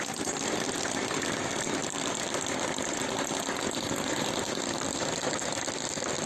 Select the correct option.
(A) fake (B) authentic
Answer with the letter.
B